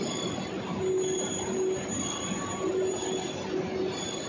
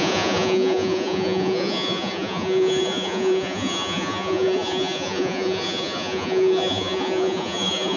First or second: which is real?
first